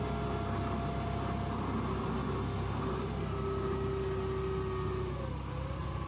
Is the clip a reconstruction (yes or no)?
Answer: no